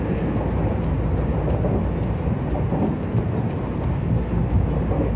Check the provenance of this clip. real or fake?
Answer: real